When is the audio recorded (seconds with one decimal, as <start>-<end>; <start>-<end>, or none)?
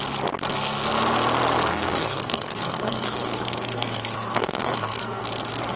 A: 0.0-1.7; 5.2-5.8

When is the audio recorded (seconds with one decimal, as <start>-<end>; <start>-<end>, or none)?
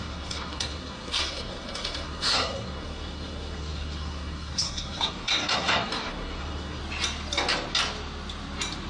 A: 6.8-8.9